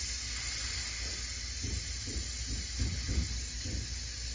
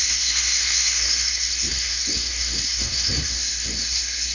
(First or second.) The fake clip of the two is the second